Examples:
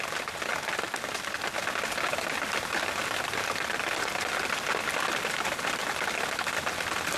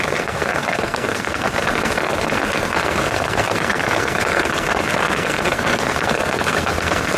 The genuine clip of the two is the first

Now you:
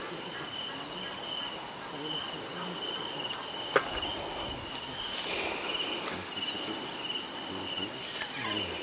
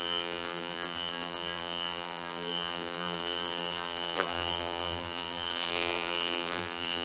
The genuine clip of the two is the first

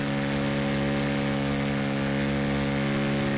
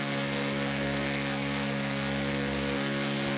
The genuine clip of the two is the first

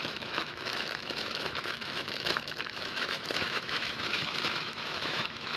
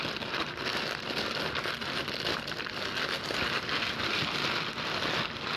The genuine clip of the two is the second